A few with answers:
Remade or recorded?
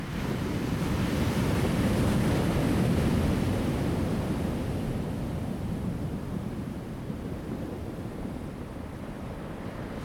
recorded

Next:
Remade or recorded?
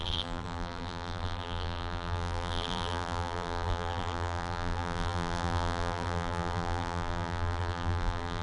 remade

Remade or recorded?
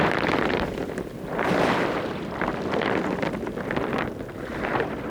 remade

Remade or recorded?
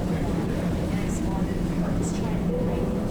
remade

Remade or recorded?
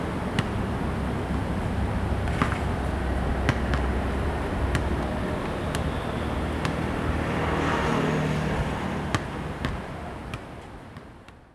recorded